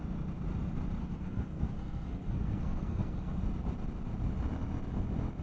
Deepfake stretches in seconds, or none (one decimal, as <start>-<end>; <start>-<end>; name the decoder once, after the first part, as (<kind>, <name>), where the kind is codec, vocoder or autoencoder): 1.0-3.4 (codec, SNAC)